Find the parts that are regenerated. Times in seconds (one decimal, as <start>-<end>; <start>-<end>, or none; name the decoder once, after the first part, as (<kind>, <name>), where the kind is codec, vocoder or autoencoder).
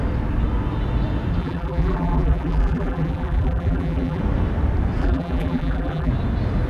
1.4-4.2 (vocoder, BigVGAN v2); 5.0-6.1